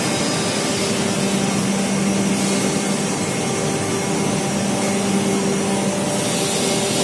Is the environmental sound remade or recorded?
recorded